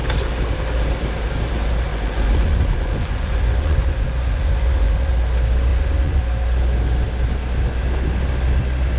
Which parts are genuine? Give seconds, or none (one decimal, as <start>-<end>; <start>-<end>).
0.0-1.9; 5.1-5.7; 6.2-9.0